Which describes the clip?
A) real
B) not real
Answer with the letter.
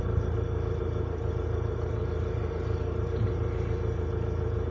A